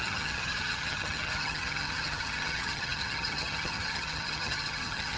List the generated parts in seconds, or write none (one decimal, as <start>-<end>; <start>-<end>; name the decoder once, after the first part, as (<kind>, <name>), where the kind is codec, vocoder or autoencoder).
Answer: 0.0-5.2 (vocoder, HiFi-GAN)